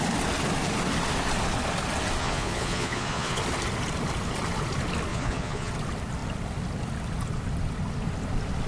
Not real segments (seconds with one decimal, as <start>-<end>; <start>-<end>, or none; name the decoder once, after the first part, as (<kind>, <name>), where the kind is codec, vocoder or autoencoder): 2.2-3.4 (vocoder, Vocos); 5.1-5.7